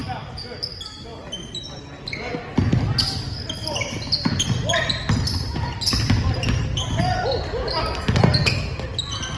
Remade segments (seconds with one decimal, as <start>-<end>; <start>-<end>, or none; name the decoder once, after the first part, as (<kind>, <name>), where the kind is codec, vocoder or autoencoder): 1.1-1.8 (vocoder, BigVGAN v2); 3.6-4.5